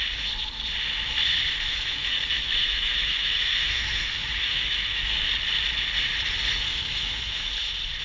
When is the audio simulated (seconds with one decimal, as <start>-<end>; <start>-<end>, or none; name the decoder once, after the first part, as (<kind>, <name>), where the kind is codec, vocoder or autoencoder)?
1.7-5.3 (autoencoder, DAC-VAE); 6.7-7.5